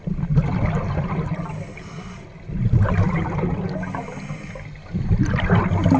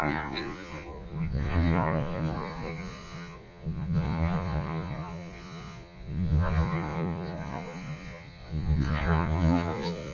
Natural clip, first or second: first